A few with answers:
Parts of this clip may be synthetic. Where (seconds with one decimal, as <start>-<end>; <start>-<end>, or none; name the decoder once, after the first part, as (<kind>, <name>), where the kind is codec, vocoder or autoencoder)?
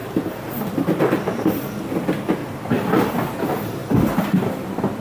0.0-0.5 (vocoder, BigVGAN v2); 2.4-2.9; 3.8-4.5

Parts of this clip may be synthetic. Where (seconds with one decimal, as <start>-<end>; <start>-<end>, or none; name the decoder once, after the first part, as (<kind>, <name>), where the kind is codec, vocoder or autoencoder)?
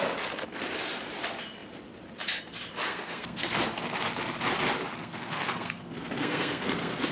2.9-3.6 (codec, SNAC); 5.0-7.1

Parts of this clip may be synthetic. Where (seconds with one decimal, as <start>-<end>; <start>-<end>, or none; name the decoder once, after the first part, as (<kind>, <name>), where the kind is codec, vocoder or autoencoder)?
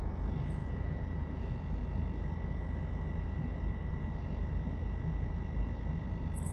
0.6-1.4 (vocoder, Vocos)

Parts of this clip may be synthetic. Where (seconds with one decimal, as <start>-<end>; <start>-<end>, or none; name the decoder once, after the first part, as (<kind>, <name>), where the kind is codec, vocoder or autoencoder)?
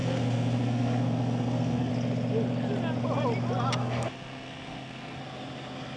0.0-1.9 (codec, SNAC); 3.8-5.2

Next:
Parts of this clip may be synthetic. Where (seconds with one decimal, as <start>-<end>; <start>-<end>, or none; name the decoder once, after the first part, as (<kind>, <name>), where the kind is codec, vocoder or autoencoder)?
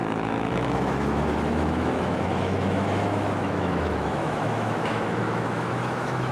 0.0-6.3 (autoencoder, DAC-VAE)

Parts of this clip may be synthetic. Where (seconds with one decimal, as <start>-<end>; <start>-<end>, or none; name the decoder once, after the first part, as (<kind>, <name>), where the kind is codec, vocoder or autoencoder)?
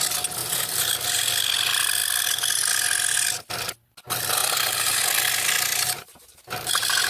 0.4-1.3 (vocoder, BigVGAN v2); 4.4-5.0; 5.7-7.1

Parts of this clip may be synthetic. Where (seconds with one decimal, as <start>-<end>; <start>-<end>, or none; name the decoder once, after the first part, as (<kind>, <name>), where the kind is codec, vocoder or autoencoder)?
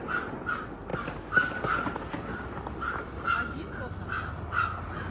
none